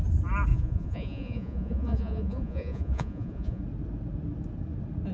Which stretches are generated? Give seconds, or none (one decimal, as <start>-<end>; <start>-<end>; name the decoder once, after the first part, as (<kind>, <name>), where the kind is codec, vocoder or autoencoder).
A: 0.5-3.6 (vocoder, Vocos)